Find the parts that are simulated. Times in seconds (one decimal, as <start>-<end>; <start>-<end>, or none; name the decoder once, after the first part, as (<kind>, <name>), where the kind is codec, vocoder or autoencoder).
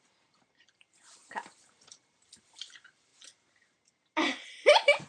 0.0-1.2 (vocoder, BigVGAN v2); 2.4-3.1